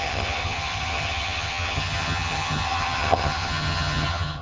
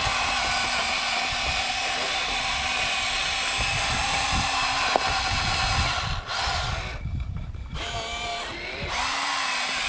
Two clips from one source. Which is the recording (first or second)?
second